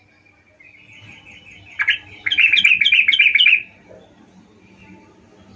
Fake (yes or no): no